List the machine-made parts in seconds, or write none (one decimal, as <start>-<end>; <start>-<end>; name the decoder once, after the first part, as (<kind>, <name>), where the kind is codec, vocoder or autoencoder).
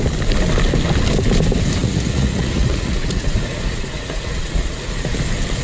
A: 1.8-5.1 (vocoder, Vocos)